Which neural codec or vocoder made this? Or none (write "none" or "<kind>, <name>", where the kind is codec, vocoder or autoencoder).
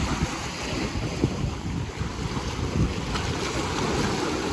none